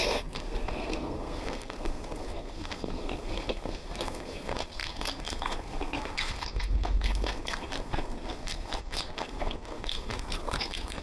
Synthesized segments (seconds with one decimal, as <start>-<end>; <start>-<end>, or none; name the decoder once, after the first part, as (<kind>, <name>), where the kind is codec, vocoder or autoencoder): 0.0-11.0 (codec, SNAC)